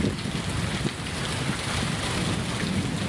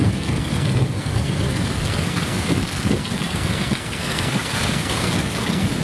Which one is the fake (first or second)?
second